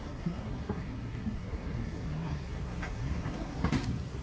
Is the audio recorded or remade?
remade